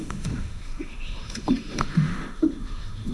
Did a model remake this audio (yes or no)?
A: yes